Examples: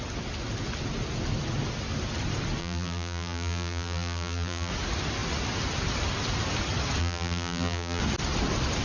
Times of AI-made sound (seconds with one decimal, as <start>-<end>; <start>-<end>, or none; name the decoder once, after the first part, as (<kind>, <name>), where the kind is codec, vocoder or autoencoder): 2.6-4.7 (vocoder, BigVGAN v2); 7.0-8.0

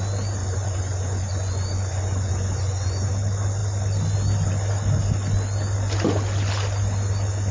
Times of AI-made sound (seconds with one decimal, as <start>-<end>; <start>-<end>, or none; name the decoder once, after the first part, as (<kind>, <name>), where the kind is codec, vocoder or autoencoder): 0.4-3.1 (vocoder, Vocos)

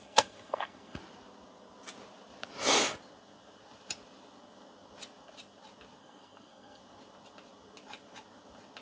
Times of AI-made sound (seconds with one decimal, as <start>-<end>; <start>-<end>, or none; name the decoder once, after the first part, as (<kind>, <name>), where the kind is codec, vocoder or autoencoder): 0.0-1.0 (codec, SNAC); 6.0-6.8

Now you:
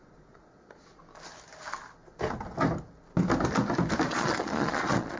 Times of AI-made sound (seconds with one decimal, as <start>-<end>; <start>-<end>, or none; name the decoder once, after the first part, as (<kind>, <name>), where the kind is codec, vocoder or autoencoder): 0.0-1.0 (vocoder, Vocos); 4.1-5.2

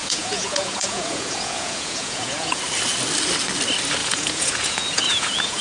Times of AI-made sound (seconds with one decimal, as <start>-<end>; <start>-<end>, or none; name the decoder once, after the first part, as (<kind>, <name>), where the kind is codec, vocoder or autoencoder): 0.0-2.6 (vocoder, Vocos); 4.0-5.6

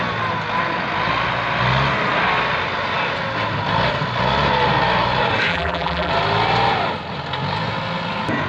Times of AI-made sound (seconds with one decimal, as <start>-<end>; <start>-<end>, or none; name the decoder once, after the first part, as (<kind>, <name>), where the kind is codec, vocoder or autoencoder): 5.5-6.1 (vocoder, BigVGAN v2)